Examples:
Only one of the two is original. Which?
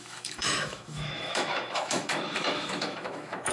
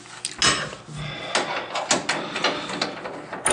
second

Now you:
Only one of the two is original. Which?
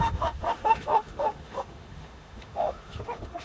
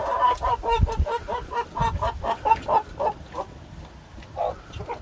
second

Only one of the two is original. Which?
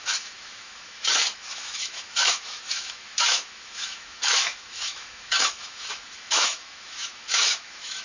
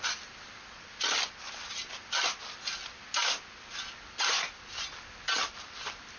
second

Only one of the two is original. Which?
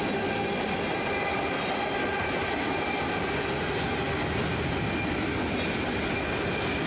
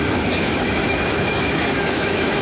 first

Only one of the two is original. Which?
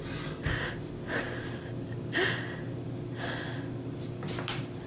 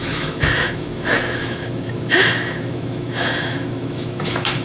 first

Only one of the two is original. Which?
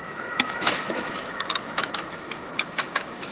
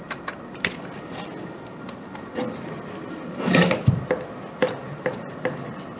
second